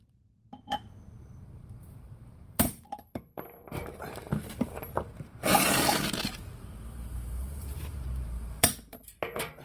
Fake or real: fake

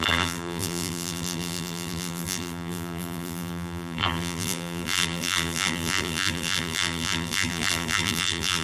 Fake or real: fake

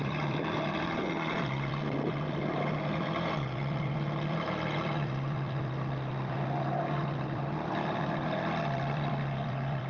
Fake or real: fake